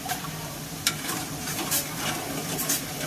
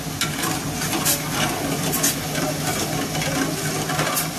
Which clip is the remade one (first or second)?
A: first